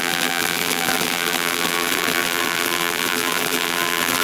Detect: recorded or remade remade